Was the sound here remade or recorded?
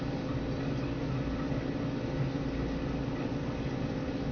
recorded